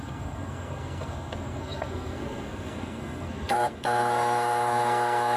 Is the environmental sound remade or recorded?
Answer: remade